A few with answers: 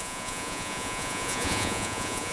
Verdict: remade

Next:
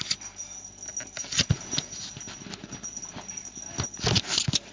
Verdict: recorded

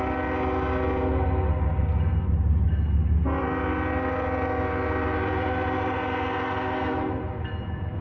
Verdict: recorded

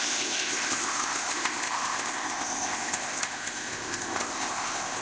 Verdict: remade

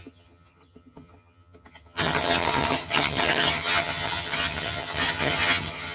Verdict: remade